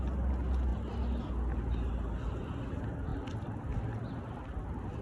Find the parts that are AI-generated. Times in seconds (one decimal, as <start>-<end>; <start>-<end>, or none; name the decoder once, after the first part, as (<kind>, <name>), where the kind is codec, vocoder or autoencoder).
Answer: none